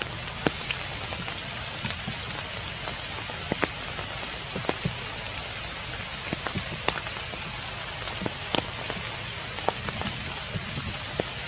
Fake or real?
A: real